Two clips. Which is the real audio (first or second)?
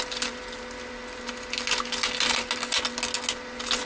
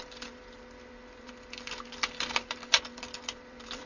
first